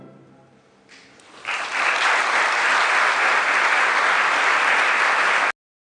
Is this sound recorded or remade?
recorded